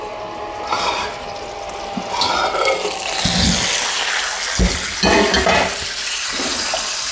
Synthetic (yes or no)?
no